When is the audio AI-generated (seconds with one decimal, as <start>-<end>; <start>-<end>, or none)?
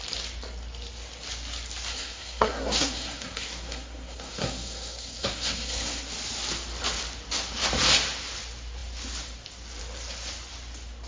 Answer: 1.9-6.1